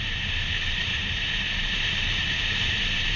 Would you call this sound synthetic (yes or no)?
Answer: yes